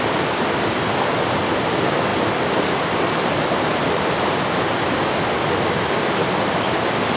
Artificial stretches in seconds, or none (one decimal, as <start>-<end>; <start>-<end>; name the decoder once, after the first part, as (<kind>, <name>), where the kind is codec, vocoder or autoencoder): none